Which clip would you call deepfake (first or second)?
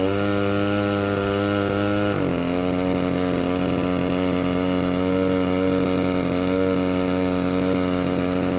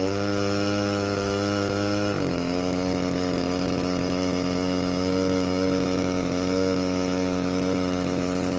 second